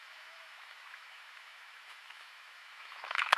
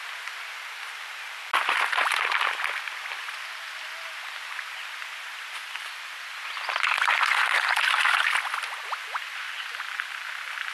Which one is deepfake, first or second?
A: first